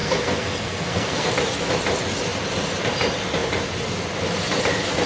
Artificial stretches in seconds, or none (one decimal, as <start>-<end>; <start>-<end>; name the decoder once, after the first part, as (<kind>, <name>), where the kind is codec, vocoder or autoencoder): 0.0-1.3 (codec, SNAC)